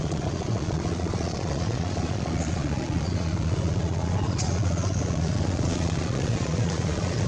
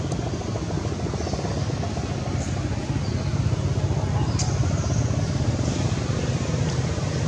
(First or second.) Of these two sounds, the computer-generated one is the first